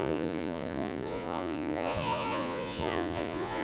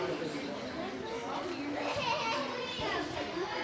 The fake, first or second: first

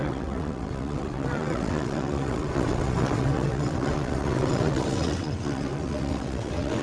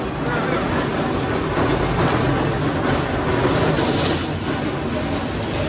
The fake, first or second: first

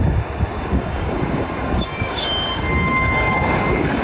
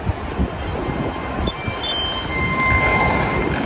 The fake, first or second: first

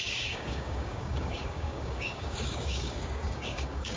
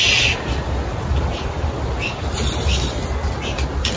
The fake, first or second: first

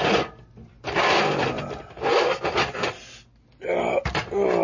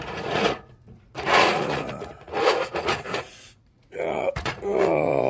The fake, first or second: second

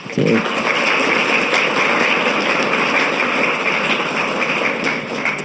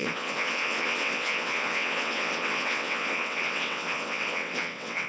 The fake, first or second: second